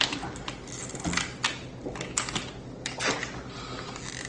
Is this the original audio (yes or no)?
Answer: yes